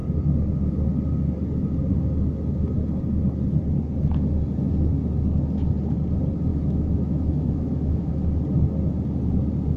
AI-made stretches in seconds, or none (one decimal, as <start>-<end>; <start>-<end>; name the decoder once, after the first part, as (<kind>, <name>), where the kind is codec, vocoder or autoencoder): 6.5-8.1 (autoencoder, DAC-VAE)